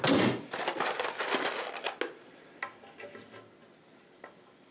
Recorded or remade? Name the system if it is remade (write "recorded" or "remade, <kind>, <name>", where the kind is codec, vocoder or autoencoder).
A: recorded